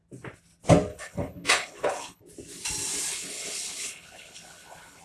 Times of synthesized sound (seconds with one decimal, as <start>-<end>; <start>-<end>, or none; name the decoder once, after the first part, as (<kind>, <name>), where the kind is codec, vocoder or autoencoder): 0.9-2.2 (codec, HILCodec); 3.1-5.0